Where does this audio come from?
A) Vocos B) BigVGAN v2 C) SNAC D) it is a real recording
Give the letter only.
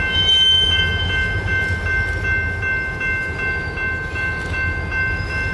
D